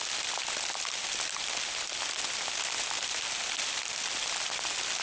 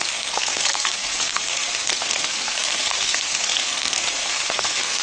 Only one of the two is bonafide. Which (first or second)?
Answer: first